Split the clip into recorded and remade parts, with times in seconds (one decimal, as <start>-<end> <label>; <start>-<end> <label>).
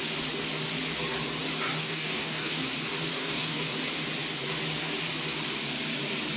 0.0-1.8 recorded; 1.8-2.6 remade; 2.6-3.1 recorded; 3.1-3.6 remade; 3.6-6.4 recorded